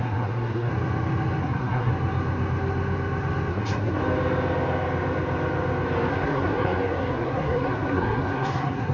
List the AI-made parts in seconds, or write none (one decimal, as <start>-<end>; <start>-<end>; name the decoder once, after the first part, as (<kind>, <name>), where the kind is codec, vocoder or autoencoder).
0.0-0.7 (codec, SNAC); 1.4-1.9; 3.5-4.0; 6.1-8.9